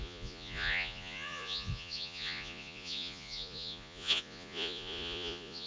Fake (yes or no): yes